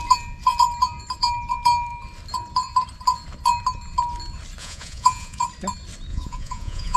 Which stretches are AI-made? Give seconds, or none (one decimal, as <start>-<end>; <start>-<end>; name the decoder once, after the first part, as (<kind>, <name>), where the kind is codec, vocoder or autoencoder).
4.6-5.4 (vocoder, Vocos); 6.1-7.0